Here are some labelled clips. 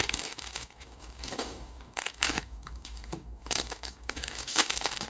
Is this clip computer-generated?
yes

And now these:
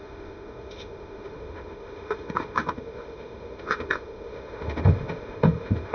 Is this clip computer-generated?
yes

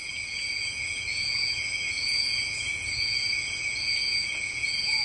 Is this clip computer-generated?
yes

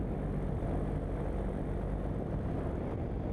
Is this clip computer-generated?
no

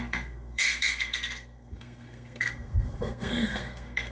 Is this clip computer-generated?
yes